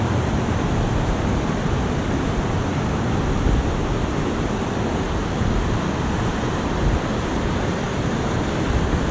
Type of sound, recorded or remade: recorded